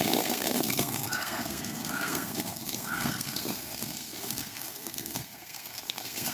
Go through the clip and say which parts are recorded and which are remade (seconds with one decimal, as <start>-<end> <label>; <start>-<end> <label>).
0.0-6.3 remade